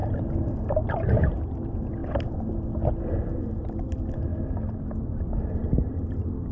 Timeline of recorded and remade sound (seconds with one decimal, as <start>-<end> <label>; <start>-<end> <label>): 0.0-1.6 recorded; 1.6-2.0 remade; 2.0-2.9 recorded; 2.9-4.3 remade; 4.3-5.3 recorded; 5.3-6.5 remade